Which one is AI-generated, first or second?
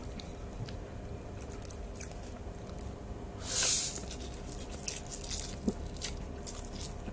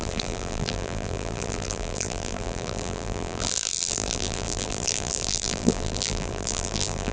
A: second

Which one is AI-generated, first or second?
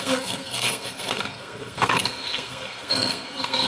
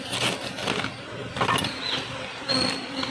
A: first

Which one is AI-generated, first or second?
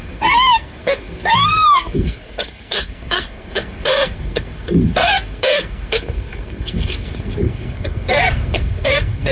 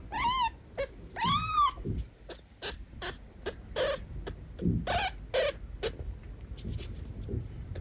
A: first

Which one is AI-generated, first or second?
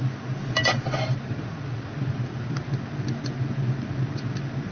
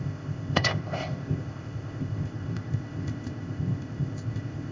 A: second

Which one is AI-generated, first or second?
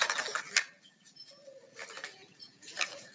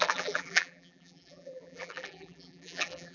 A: second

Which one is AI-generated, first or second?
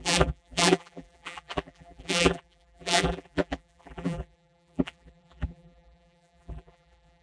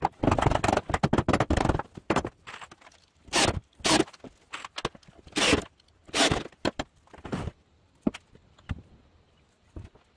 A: first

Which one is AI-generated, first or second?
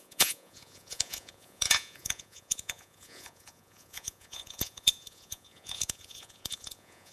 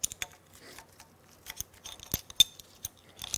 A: first